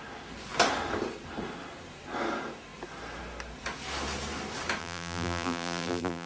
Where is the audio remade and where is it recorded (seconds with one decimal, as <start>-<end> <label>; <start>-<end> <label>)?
0.0-4.8 recorded; 4.8-6.3 remade

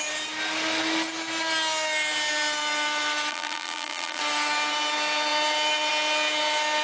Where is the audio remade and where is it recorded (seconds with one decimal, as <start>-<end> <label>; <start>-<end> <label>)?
0.0-3.3 recorded; 3.3-4.2 remade; 4.2-6.8 recorded

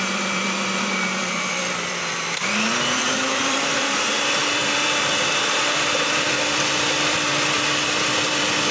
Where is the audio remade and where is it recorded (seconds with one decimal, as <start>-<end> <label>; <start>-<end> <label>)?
0.0-8.7 remade

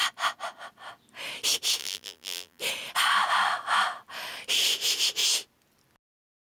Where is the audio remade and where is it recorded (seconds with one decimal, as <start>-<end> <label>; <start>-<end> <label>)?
0.0-1.8 recorded; 1.8-2.6 remade; 2.6-6.5 recorded

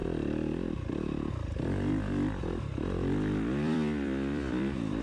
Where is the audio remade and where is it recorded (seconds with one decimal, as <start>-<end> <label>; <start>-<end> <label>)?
0.0-1.3 recorded; 1.3-5.0 remade

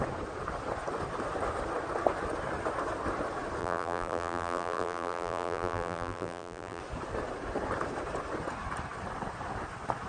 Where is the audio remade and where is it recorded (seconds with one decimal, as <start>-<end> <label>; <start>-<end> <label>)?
0.0-3.6 recorded; 3.6-6.8 remade; 6.8-10.1 recorded

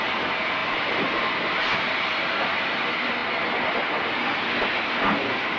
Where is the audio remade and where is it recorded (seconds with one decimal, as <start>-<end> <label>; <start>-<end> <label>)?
0.0-0.6 recorded; 0.6-2.0 remade; 2.0-5.6 recorded